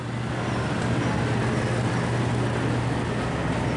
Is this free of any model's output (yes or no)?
yes